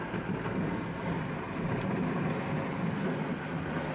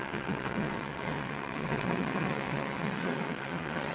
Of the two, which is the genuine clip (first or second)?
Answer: first